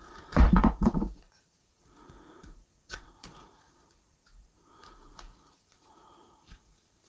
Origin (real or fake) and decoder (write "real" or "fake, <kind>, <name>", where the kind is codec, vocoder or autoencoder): fake, vocoder, Vocos